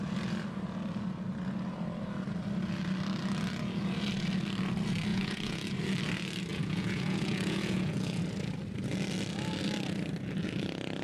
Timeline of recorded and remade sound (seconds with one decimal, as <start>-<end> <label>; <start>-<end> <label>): 0.0-5.1 recorded; 5.1-5.7 remade; 5.7-6.5 recorded; 6.5-8.2 remade; 8.2-11.0 recorded